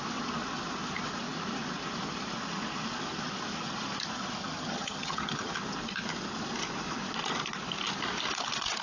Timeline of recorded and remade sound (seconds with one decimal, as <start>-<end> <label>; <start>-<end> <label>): 0.0-4.4 recorded; 4.4-5.5 remade; 5.5-8.8 recorded

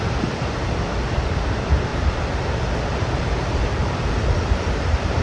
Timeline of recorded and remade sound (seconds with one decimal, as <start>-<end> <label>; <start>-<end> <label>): 0.0-1.9 recorded; 1.9-4.7 remade; 4.7-5.2 recorded

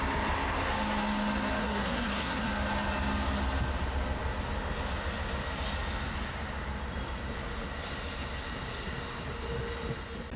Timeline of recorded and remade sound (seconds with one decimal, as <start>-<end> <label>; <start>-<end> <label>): 0.0-1.6 recorded; 1.6-2.5 remade; 2.5-10.4 recorded

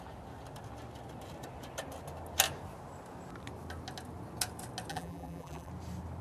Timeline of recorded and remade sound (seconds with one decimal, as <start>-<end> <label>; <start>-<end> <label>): 0.0-4.9 recorded; 4.9-5.7 remade; 5.7-6.2 recorded

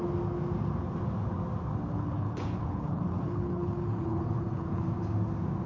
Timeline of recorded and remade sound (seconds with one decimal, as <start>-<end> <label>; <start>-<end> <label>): 0.0-1.9 recorded; 1.9-4.8 remade; 4.8-5.7 recorded

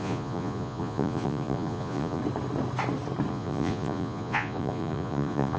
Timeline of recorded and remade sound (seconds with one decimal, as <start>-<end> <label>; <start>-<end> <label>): 0.0-2.2 remade; 2.2-3.3 recorded; 3.3-5.6 remade

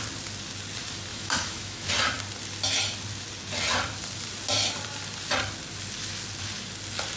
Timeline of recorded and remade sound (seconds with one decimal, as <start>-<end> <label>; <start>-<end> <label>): 0.0-1.1 recorded; 1.1-1.9 remade; 1.9-7.2 recorded